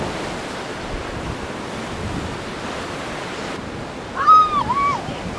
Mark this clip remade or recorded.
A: recorded